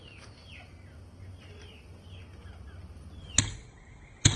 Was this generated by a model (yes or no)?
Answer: no